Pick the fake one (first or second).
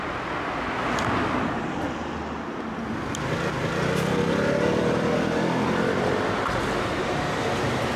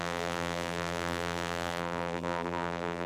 second